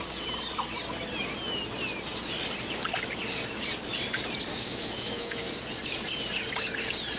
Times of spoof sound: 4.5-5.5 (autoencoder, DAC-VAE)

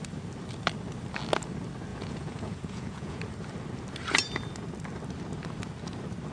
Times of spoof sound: 1.9-3.2 (vocoder, Vocos)

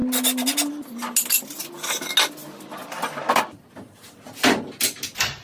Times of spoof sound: none

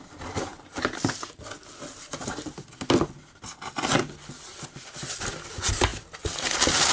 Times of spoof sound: none

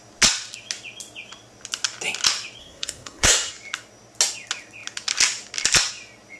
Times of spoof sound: 2.6-3.5 (codec, SNAC)

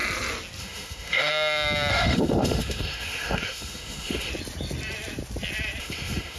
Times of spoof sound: 0.6-1.3 (autoencoder, DAC-VAE); 1.9-4.3; 5.8-6.4

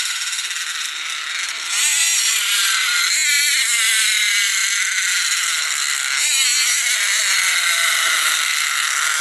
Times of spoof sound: none